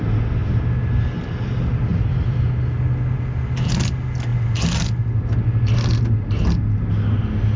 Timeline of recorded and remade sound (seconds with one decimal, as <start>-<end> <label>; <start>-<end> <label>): 0.0-1.9 recorded; 1.9-2.5 remade; 2.5-7.6 recorded